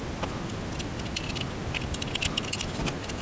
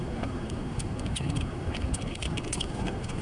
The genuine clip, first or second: first